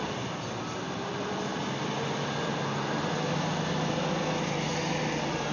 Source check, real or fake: real